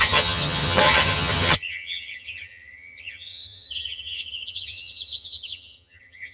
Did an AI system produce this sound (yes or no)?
yes